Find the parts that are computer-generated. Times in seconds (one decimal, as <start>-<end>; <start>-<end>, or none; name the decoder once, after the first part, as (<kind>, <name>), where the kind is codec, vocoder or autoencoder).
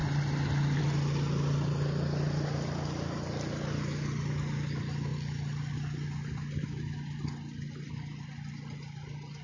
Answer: none